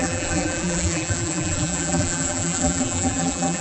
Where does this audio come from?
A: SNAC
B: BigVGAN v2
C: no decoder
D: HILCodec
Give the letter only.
B